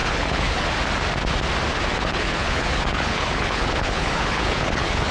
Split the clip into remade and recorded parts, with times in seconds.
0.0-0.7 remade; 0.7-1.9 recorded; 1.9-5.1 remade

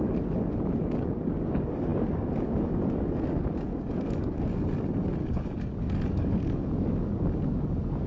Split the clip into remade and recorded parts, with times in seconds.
0.0-8.1 remade

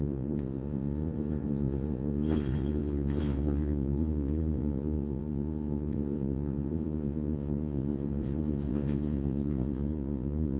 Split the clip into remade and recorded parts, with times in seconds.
0.0-10.6 remade

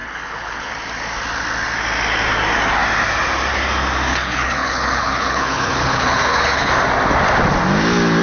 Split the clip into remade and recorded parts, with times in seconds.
0.0-0.7 remade; 0.7-4.1 recorded; 4.1-6.7 remade; 6.7-8.2 recorded

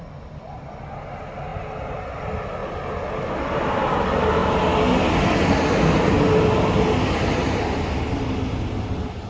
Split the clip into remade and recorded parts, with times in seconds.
0.0-9.3 recorded

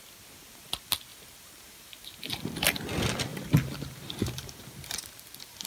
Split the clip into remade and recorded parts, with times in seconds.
0.0-1.1 recorded; 1.1-2.6 remade; 2.6-3.3 recorded; 3.3-5.7 remade